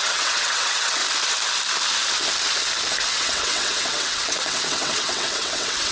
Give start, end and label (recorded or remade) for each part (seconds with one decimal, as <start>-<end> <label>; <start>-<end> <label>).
0.0-1.0 remade; 1.0-3.1 recorded; 3.1-5.9 remade